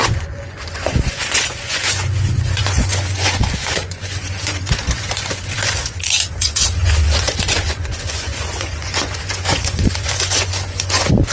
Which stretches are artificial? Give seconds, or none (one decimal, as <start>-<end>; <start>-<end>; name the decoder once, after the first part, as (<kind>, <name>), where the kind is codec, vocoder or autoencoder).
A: 0.0-11.3 (vocoder, Vocos)